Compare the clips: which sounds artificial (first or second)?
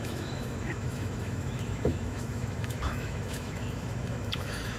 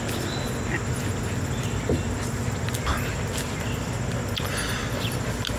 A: first